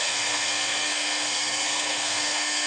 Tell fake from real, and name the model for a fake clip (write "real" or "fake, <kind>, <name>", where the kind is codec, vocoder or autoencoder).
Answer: fake, codec, SNAC